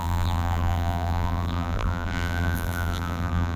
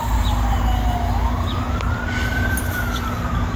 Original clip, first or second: second